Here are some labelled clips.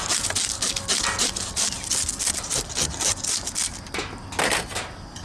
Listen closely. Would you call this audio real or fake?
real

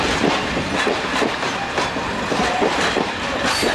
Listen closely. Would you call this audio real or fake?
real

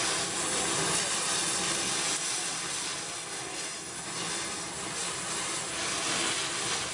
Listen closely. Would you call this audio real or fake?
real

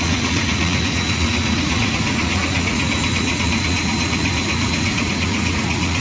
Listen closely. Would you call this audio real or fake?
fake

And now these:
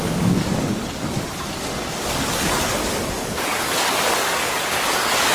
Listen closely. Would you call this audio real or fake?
fake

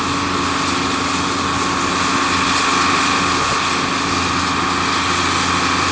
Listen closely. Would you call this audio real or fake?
real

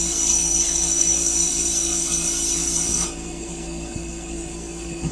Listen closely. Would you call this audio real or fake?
fake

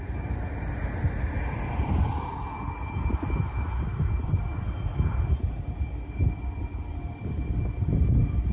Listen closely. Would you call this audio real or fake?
real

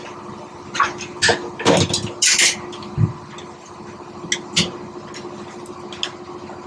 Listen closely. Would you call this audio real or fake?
real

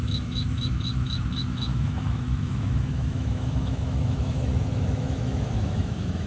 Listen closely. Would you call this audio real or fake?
fake